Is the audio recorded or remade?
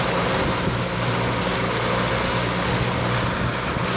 recorded